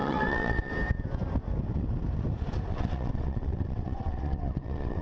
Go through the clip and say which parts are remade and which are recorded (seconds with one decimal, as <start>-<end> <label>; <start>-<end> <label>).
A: 0.0-0.7 remade; 0.7-2.7 recorded; 2.7-5.0 remade